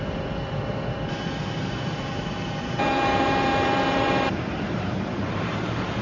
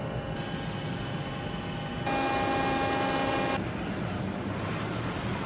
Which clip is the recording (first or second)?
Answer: second